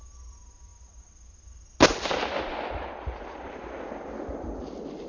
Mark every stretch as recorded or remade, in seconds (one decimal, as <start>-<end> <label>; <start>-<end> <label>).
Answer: 0.0-5.1 recorded